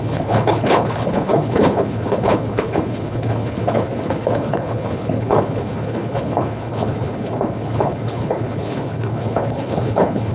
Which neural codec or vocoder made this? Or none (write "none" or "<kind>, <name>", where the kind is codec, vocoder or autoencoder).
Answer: codec, HILCodec